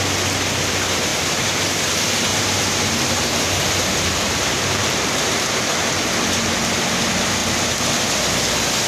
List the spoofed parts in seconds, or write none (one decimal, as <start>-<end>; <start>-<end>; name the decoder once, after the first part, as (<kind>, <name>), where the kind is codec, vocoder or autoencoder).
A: 1.1-1.8 (vocoder, BigVGAN v2); 2.3-5.8; 7.4-7.9